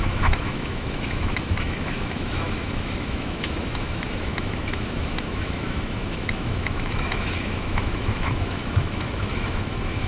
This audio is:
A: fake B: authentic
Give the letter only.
A